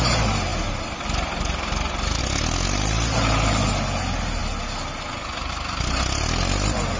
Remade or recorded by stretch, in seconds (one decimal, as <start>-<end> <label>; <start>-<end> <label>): 0.0-7.0 recorded